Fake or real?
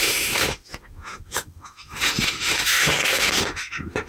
fake